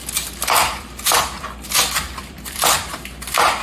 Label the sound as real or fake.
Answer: fake